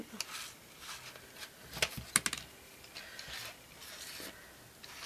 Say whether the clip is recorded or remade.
recorded